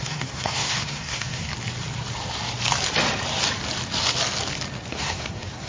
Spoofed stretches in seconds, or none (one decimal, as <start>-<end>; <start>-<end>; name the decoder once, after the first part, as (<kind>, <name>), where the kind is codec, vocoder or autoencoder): 0.0-1.5 (codec, SNAC); 4.9-5.7